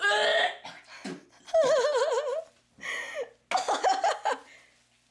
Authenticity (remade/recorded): recorded